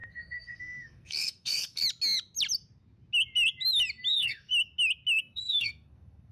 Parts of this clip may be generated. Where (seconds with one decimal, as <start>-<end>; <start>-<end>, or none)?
0.0-1.8; 4.1-4.5; 5.2-6.3